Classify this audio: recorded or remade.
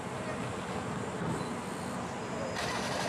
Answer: recorded